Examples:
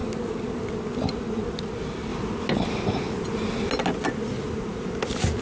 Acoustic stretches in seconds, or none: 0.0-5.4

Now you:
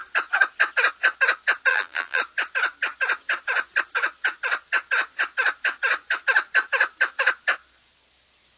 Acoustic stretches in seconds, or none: 0.0-1.7; 2.2-8.6